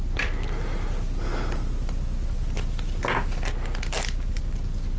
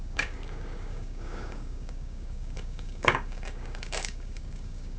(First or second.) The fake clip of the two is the second